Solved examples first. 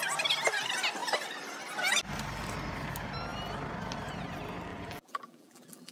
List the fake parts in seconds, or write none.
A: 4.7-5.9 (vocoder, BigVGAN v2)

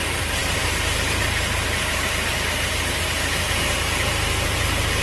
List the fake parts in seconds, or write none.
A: 0.0-5.0 (vocoder, BigVGAN v2)

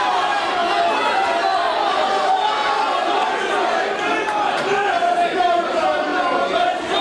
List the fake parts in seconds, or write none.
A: 0.0-0.6 (vocoder, BigVGAN v2); 4.4-6.1; 6.6-7.0

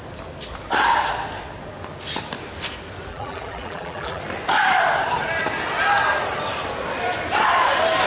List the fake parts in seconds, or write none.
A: 3.1-4.2 (vocoder, BigVGAN v2)

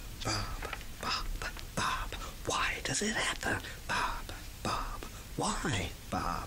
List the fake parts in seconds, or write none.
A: 0.0-6.5 (vocoder, BigVGAN v2)

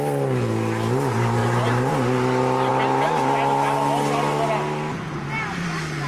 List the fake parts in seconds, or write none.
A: 1.4-1.9 (vocoder, BigVGAN v2)